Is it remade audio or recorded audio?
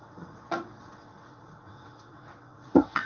remade